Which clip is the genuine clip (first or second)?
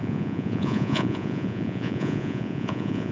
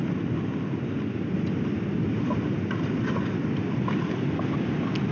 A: second